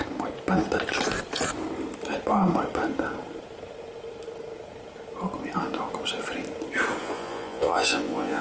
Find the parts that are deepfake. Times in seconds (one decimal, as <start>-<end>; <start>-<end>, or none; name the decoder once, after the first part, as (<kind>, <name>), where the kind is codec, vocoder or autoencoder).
7.0-8.4 (vocoder, Vocos)